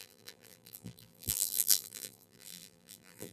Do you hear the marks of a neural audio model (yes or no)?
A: yes